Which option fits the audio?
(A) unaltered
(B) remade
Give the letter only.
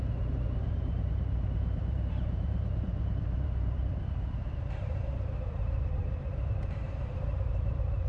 B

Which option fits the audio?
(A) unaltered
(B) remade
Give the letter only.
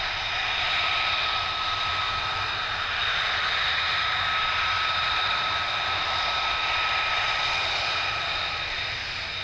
A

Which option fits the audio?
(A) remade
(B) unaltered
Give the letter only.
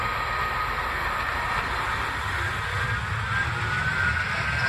B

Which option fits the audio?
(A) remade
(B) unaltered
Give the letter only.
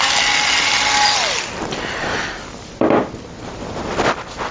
B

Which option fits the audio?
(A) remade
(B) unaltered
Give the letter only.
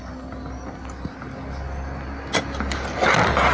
B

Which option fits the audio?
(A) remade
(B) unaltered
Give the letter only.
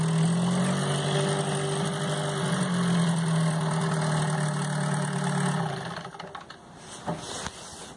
B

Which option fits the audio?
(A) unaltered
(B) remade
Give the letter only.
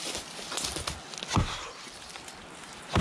A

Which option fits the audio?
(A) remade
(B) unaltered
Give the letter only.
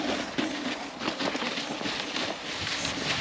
B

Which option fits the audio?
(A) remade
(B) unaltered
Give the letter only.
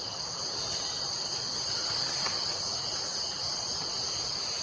B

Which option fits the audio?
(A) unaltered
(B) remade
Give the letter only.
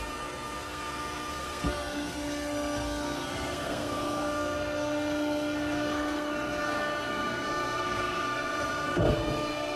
B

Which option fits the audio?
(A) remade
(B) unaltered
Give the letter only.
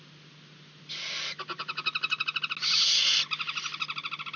B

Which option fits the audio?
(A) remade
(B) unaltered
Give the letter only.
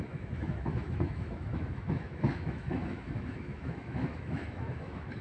A